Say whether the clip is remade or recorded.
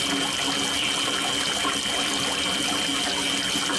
recorded